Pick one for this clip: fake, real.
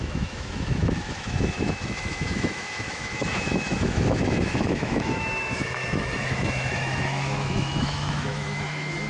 fake